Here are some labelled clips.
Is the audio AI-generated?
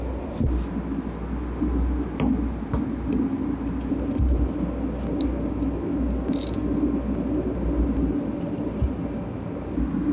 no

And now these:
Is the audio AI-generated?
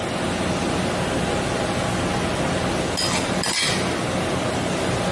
no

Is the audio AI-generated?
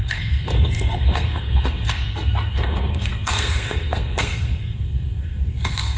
yes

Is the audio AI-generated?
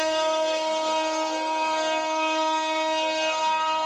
yes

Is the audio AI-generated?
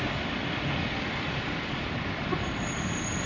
yes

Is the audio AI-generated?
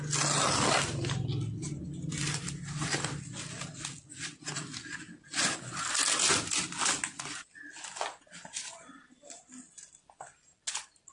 no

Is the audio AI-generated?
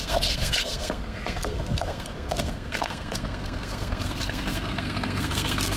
yes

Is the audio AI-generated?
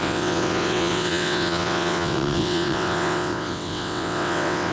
yes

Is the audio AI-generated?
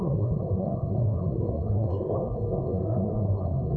yes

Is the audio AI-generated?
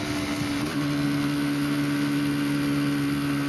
no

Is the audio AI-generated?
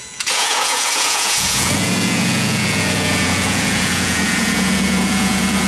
yes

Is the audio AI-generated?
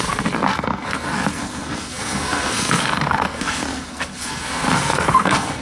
yes